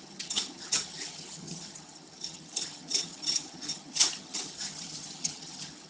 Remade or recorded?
remade